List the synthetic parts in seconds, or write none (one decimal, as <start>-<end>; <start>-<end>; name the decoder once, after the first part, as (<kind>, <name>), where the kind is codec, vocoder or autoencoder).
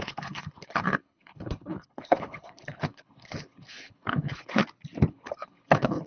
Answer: 0.0-4.6 (codec, HILCodec); 5.1-6.1